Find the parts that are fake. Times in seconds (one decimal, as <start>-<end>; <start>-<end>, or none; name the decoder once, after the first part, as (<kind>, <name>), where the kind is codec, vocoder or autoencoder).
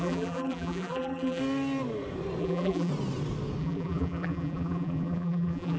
0.0-1.4 (vocoder, BigVGAN v2); 2.4-2.9; 3.6-5.8